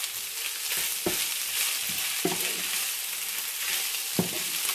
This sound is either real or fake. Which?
real